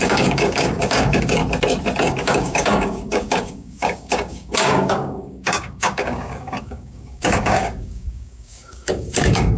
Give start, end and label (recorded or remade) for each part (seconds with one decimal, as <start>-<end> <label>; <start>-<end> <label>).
0.0-1.4 remade; 1.4-2.0 recorded; 2.0-9.6 remade